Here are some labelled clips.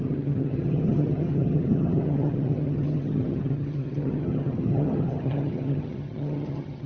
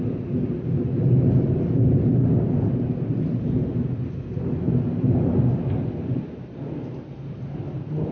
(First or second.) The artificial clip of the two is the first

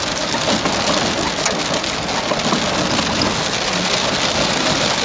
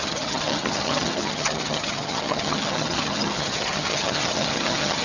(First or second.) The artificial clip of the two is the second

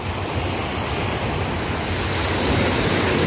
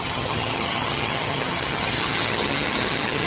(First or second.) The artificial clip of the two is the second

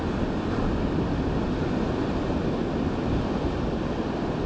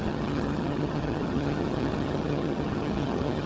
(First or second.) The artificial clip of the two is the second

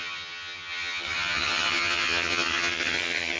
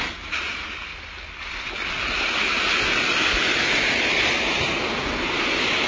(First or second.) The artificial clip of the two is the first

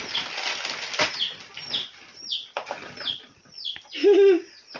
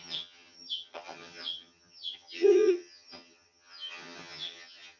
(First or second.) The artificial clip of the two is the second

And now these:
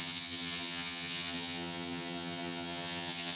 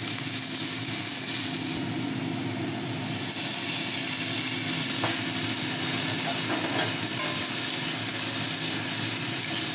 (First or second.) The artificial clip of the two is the first